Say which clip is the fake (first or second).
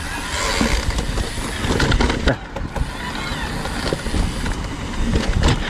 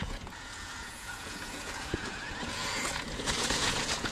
second